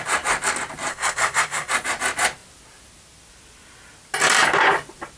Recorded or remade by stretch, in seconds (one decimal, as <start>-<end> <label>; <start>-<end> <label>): 0.0-0.9 recorded; 0.9-1.7 remade; 1.7-5.2 recorded